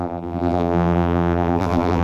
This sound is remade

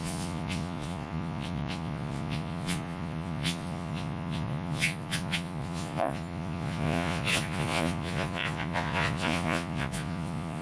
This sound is remade